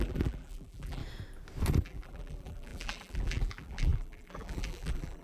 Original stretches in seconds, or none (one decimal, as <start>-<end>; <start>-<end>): 1.0-1.8